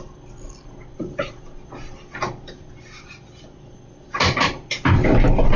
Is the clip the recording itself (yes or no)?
yes